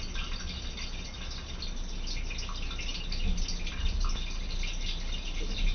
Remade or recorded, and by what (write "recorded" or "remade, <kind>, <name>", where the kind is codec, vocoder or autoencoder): recorded